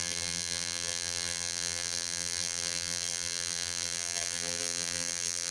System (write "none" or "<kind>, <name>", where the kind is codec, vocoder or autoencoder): vocoder, BigVGAN v2